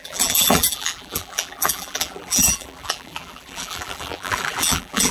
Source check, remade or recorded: remade